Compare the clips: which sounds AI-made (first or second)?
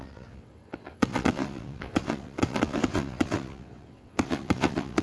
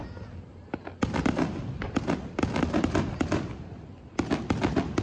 first